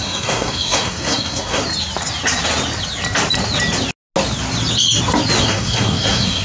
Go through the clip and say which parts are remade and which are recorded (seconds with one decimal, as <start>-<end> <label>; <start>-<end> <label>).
0.0-1.6 remade; 1.6-5.4 recorded; 5.4-6.4 remade